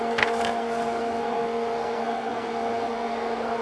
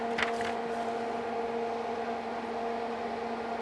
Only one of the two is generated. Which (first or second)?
first